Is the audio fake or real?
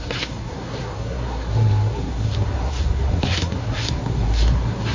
fake